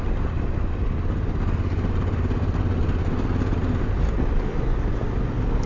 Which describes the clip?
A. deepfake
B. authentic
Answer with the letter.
B